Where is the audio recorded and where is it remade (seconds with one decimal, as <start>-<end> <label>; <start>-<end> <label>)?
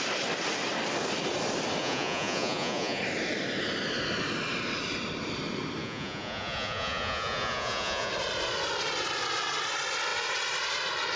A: 0.0-1.8 recorded; 1.8-3.0 remade; 3.0-5.8 recorded; 5.8-8.1 remade; 8.1-11.2 recorded